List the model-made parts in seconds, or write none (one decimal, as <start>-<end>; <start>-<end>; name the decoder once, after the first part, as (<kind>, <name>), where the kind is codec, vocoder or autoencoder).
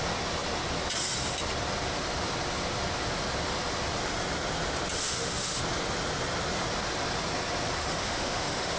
5.0-5.6 (autoencoder, DAC-VAE); 7.8-8.8